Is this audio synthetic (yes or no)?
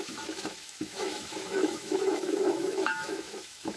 yes